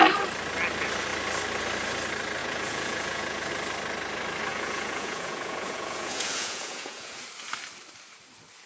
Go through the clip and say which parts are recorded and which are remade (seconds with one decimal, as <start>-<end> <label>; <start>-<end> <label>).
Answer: 0.0-2.4 recorded; 2.4-3.5 remade; 3.5-4.5 recorded; 4.5-7.2 remade; 7.2-8.7 recorded